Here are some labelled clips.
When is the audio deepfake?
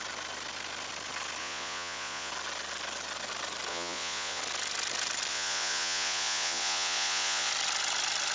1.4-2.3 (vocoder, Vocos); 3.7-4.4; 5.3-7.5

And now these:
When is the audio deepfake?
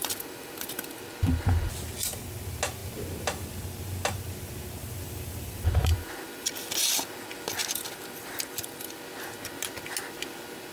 0.0-1.0 (vocoder, BigVGAN v2); 4.8-6.5; 7.6-9.0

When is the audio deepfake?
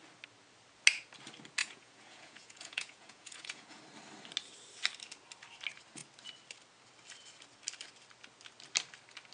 1.6-3.8 (vocoder, Vocos)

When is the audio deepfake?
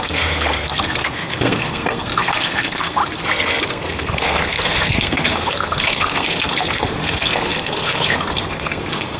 0.0-3.0 (codec, SNAC); 3.7-9.2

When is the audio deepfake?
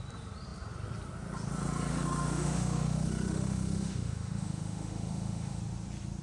1.9-5.6 (autoencoder, DAC-VAE)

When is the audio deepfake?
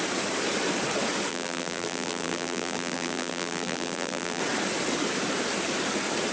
1.3-4.4 (vocoder, BigVGAN v2)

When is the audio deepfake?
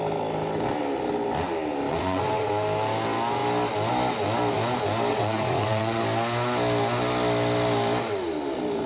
1.9-2.5 (vocoder, WaveNeXt); 5.1-6.0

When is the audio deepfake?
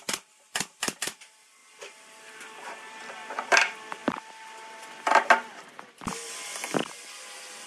0.0-1.6 (vocoder, BigVGAN v2); 3.3-4.0; 5.6-6.8